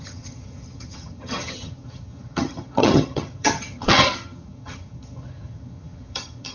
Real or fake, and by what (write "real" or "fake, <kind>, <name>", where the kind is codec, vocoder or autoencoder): fake, vocoder, HiFi-GAN